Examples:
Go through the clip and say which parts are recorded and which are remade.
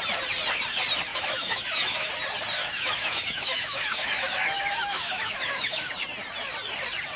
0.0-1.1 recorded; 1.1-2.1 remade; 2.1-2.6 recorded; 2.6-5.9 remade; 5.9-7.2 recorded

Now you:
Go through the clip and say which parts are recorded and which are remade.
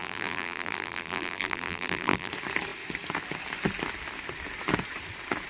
0.0-2.3 remade; 2.3-5.5 recorded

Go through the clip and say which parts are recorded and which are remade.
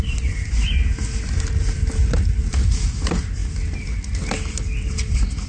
0.0-5.5 recorded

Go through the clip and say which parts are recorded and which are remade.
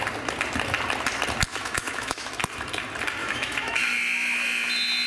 0.0-1.5 recorded; 1.5-2.3 remade; 2.3-3.2 recorded; 3.2-3.8 remade; 3.8-5.1 recorded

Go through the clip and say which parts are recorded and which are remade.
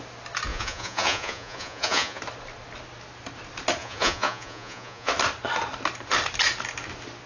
0.0-0.5 recorded; 0.5-2.2 remade; 2.2-3.8 recorded; 3.8-5.1 remade; 5.1-7.3 recorded